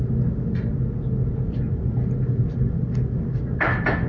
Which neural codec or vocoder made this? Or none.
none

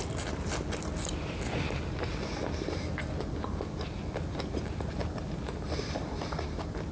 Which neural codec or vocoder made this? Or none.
none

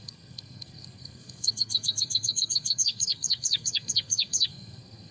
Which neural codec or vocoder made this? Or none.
codec, SNAC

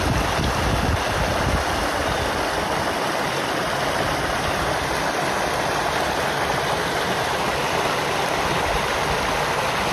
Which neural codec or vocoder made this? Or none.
none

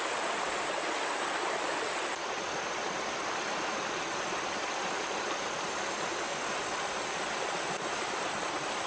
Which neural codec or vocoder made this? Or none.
none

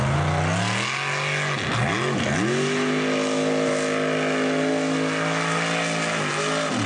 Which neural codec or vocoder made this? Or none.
none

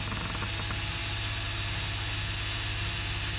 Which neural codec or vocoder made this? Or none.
none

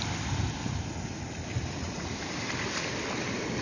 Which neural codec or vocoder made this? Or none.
vocoder, BigVGAN v2